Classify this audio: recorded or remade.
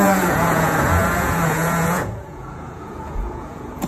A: remade